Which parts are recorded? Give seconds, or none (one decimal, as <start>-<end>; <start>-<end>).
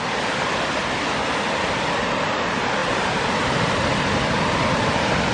0.0-2.8; 3.7-5.3